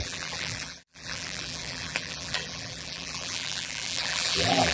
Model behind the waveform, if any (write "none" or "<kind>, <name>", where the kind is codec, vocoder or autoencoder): vocoder, BigVGAN v2